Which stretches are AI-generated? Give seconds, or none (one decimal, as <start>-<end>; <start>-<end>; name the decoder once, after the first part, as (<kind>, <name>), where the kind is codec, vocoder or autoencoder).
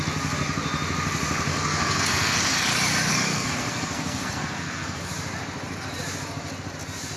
1.5-2.4 (codec, SNAC); 3.1-5.1